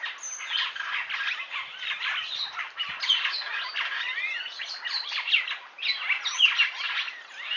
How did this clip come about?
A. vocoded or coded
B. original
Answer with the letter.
B